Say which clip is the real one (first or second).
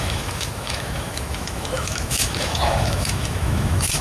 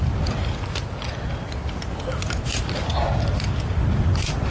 second